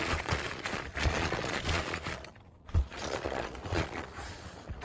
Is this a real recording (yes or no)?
no